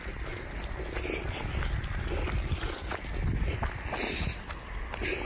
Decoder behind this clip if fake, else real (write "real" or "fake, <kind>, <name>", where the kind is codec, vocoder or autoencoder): real